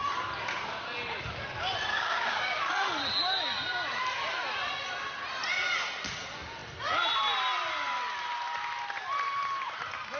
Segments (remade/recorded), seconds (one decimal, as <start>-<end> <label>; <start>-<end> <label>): 0.0-1.9 recorded; 1.9-2.7 remade; 2.7-10.2 recorded